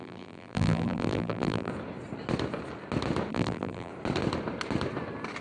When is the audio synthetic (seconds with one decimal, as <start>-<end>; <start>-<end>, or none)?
0.0-1.7; 3.3-3.9